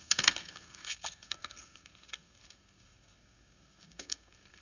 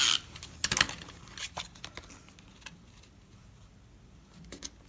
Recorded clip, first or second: second